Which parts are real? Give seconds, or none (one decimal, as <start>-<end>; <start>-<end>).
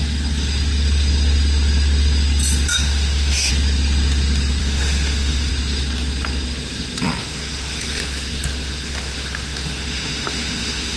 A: 0.0-2.7; 3.5-4.6; 5.5-7.2